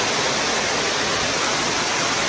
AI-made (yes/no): no